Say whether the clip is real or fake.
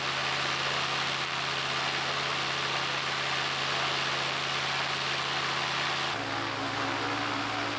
real